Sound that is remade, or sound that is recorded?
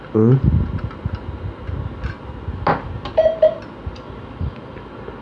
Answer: recorded